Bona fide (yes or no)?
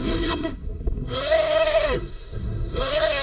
no